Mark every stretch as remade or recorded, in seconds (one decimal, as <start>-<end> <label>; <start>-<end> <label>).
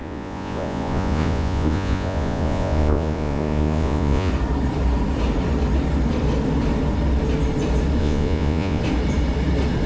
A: 0.0-4.3 remade; 4.3-8.0 recorded; 8.0-8.8 remade; 8.8-9.9 recorded